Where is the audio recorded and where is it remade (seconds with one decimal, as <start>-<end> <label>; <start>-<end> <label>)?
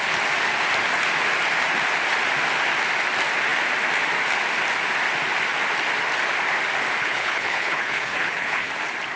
0.0-7.0 recorded; 7.0-8.7 remade; 8.7-9.2 recorded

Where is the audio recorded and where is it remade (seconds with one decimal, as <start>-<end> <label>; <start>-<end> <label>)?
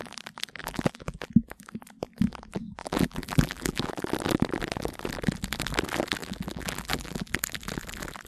0.0-0.6 recorded; 0.6-1.3 remade; 1.3-2.8 recorded; 2.8-3.9 remade; 3.9-6.2 recorded; 6.2-7.3 remade; 7.3-8.3 recorded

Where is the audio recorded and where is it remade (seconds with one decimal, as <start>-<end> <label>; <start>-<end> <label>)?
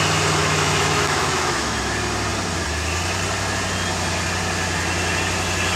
0.0-0.4 recorded; 0.4-1.8 remade; 1.8-5.8 recorded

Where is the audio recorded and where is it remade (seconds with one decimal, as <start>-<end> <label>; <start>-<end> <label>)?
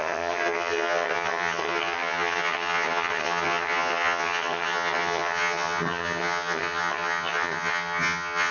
0.0-8.5 remade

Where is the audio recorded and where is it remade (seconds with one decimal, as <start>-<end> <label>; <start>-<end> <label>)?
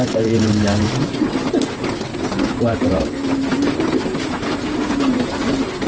0.0-5.9 recorded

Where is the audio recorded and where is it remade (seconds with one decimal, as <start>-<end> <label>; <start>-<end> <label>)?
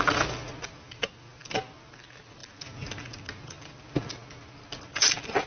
0.0-5.5 recorded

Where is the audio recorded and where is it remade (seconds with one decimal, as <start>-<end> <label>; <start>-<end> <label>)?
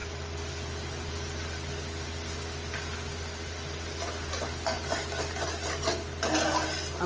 0.0-7.1 recorded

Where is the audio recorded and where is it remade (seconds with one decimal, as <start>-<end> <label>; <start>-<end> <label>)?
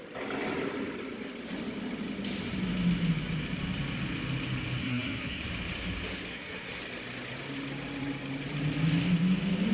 0.0-4.8 recorded; 4.8-5.4 remade; 5.4-6.3 recorded; 6.3-6.8 remade; 6.8-9.7 recorded